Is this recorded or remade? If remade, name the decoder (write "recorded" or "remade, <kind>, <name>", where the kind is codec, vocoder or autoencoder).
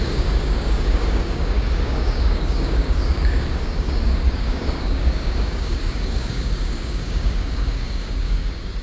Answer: remade, codec, DAC